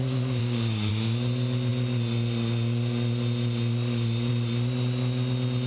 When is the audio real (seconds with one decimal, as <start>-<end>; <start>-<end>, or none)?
0.0-0.4; 0.9-5.7